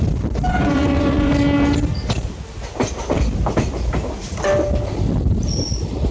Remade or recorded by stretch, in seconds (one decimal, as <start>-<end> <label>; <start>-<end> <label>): 0.0-0.5 recorded; 0.5-1.3 remade; 1.3-6.1 recorded